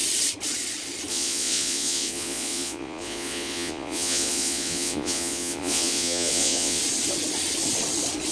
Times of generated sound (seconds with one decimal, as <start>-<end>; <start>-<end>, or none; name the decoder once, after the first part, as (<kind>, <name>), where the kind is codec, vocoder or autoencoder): 1.1-6.8 (vocoder, Vocos)